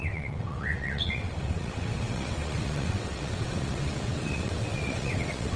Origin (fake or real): fake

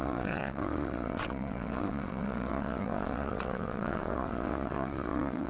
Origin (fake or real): fake